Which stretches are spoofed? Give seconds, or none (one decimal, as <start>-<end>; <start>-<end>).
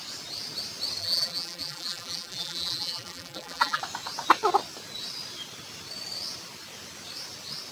1.0-3.8